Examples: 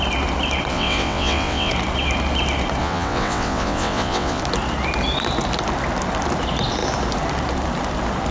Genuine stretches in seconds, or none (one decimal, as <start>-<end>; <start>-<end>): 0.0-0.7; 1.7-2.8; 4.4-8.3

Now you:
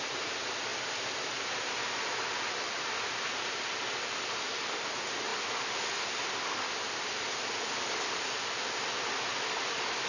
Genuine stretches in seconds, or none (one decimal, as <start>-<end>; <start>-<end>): 0.0-10.1

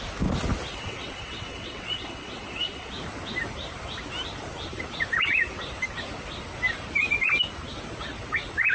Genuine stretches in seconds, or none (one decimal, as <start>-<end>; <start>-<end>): 0.0-0.7; 2.9-8.7